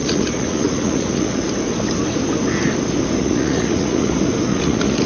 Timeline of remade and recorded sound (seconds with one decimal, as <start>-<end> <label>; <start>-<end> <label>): 0.0-1.5 remade; 1.5-3.2 recorded; 3.2-4.1 remade; 4.1-4.5 recorded; 4.5-5.1 remade